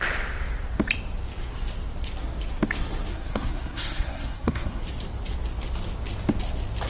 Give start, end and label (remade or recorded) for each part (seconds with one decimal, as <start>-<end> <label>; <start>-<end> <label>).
0.0-3.1 recorded; 3.1-4.8 remade; 4.8-6.9 recorded